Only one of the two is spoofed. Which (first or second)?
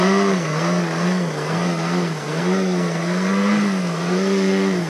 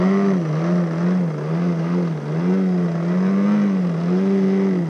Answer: first